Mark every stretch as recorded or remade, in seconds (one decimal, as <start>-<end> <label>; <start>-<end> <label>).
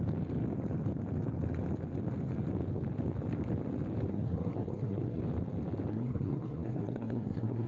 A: 0.0-4.1 recorded; 4.1-5.2 remade; 5.2-5.9 recorded; 5.9-7.7 remade